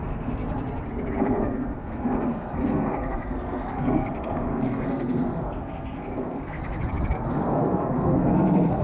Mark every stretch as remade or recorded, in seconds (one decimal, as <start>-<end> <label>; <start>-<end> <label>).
0.0-0.4 remade; 0.4-1.2 recorded; 1.2-6.6 remade; 6.6-7.3 recorded; 7.3-8.8 remade